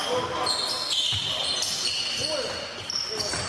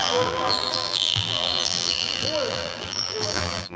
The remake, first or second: second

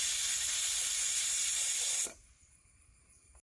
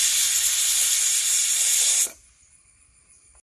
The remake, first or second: first